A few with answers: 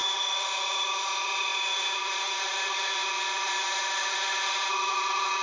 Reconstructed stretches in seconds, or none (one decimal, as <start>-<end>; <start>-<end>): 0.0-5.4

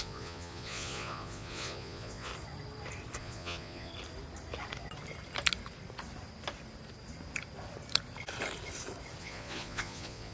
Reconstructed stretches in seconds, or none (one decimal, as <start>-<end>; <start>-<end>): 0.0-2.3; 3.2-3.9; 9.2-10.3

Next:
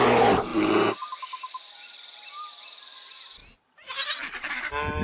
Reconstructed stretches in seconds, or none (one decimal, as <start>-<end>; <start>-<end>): none

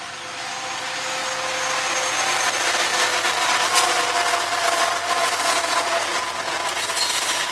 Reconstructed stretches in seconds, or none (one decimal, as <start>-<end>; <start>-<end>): 5.2-7.5